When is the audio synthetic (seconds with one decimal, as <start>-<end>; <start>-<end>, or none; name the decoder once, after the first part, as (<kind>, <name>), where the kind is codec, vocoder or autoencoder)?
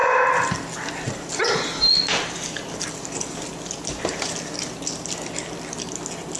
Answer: none